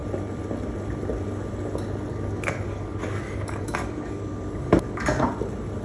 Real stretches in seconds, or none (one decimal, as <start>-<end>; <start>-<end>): 0.0-2.1; 5.2-5.8

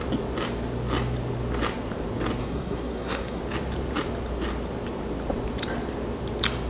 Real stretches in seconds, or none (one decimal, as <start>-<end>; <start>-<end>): 0.0-2.4; 3.4-6.7

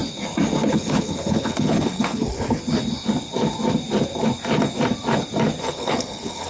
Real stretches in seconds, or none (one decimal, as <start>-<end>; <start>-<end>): 0.0-0.7; 2.6-5.6

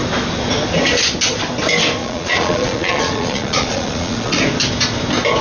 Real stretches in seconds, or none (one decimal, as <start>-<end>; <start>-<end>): 0.0-2.0; 4.4-5.4

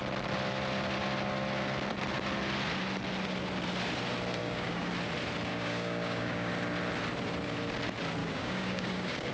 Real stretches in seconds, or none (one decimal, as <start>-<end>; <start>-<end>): 0.0-4.4; 4.9-5.5; 6.5-8.2

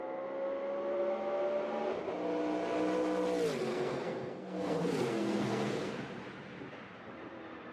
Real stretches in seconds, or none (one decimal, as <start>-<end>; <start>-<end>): 0.0-3.7; 5.9-7.7